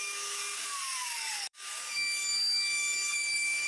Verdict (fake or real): fake